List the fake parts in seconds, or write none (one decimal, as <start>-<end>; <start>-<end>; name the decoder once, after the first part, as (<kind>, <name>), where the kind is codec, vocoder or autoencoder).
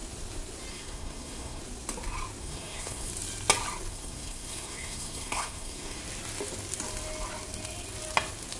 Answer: 0.7-1.6 (codec, SNAC); 2.4-3.1; 3.9-6.0